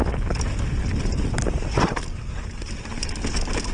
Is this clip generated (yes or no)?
no